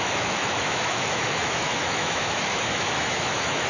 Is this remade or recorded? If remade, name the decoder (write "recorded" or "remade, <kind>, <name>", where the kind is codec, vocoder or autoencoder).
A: remade, autoencoder, DAC-VAE